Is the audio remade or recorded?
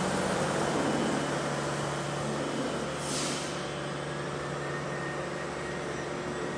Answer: recorded